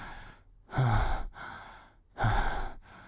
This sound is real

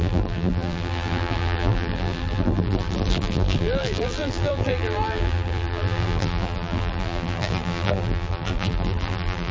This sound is fake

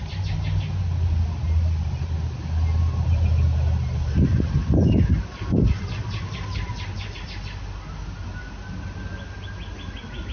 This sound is real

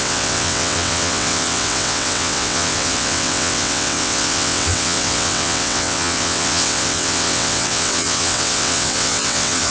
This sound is fake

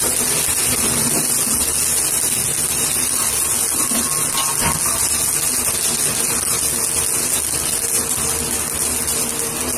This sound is real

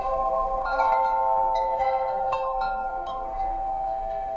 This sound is fake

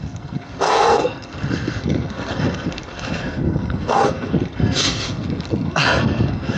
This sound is fake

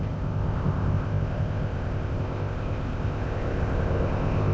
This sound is fake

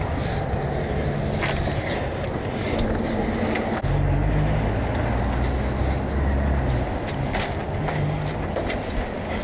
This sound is real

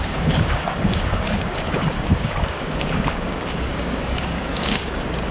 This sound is fake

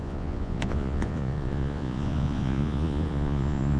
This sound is fake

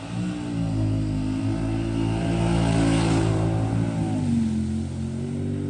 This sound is real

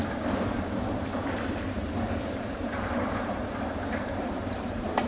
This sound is fake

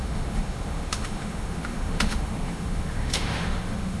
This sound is fake